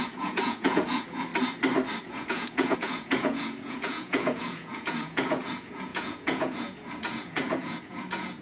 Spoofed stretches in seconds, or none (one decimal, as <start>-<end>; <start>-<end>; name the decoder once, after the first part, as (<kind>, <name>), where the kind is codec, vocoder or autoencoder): 0.0-1.3 (vocoder, Vocos); 2.0-8.4